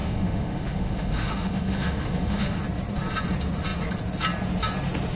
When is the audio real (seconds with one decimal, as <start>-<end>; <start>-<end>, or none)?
2.6-5.2